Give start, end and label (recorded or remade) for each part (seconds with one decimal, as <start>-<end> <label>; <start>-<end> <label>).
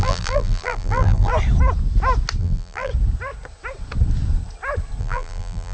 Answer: 0.0-1.3 remade; 1.3-2.4 recorded; 2.4-2.9 remade; 2.9-5.0 recorded; 5.0-5.7 remade